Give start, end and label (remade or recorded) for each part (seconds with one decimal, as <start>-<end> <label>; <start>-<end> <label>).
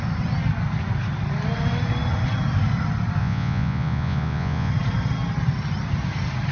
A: 0.0-3.2 recorded; 3.2-4.7 remade; 4.7-6.5 recorded